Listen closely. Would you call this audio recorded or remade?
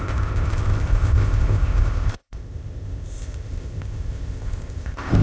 remade